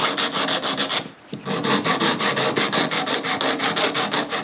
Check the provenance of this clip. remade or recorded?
recorded